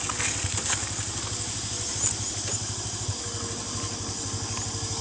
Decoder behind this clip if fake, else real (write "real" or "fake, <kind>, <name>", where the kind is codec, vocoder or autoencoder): real